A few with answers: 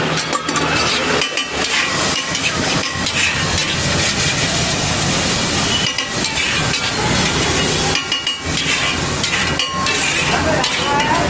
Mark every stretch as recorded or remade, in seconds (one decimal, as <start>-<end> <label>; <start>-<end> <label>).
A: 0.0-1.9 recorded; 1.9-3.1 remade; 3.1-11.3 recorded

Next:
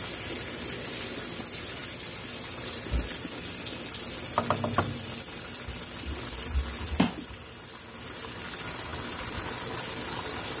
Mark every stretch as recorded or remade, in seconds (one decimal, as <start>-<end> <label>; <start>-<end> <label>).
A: 0.0-10.6 recorded

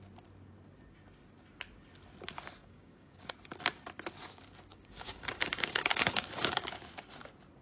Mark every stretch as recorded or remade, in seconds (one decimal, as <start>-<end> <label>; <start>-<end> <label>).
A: 0.0-2.6 recorded; 2.6-3.3 remade; 3.3-4.7 recorded; 4.7-6.6 remade; 6.6-7.6 recorded

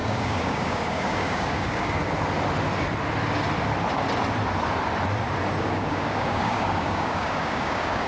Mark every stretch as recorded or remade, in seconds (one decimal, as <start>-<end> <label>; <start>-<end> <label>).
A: 0.0-2.0 remade; 2.0-5.6 recorded; 5.6-8.1 remade

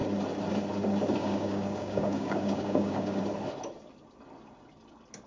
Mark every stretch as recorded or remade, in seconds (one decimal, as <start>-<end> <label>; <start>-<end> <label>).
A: 0.0-1.2 recorded; 1.2-3.2 remade; 3.2-5.3 recorded

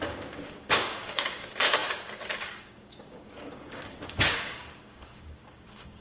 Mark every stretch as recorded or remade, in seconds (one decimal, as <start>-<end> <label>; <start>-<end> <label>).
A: 0.0-6.0 remade